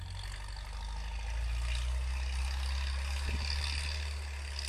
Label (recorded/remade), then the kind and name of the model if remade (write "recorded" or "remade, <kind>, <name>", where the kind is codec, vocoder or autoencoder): recorded